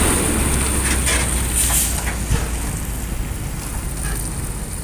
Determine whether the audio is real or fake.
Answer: real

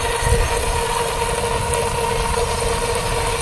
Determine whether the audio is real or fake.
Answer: real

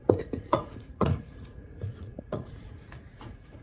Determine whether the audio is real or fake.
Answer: fake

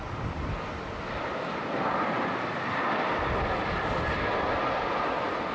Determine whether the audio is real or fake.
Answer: fake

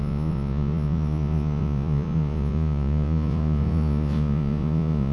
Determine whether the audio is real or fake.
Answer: fake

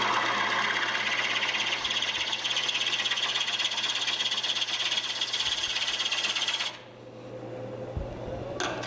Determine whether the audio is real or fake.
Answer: real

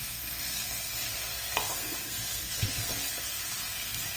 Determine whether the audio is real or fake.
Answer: fake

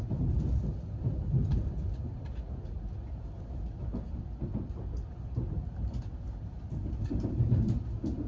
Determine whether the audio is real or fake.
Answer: real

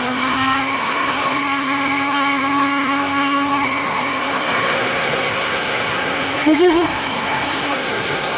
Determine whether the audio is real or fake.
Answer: fake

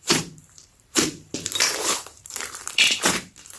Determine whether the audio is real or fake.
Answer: fake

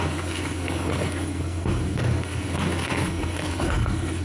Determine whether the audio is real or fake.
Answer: fake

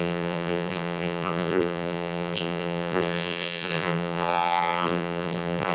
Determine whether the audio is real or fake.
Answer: fake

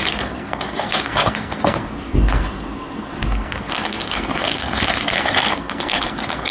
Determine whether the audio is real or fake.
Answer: fake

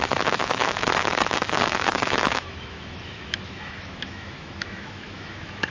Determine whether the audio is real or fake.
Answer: fake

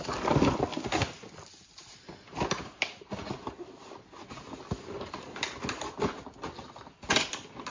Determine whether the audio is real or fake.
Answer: real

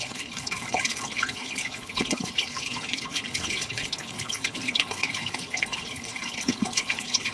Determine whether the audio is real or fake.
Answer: fake